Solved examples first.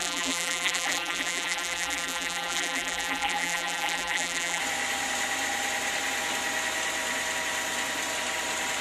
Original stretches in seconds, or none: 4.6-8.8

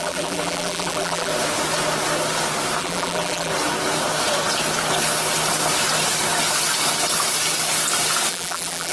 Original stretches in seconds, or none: 1.3-2.8; 3.5-8.3

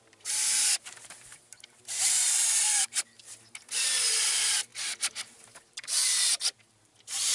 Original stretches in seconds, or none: 4.7-5.3

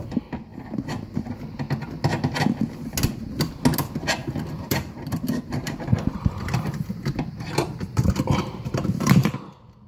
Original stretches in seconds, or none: 0.0-4.2; 9.4-9.9

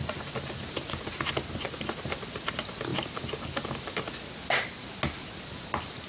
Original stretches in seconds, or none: 0.0-6.1

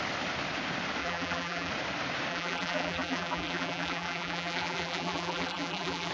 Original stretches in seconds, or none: 0.0-1.0; 1.7-2.3

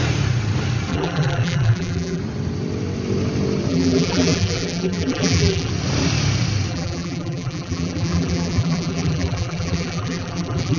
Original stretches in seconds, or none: 0.0-0.9; 2.2-3.7; 5.7-6.7

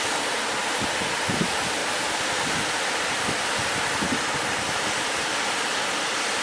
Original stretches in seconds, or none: 0.0-1.8; 3.2-6.4